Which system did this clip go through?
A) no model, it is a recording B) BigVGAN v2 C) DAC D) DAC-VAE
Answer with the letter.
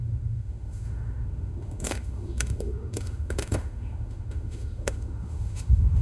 D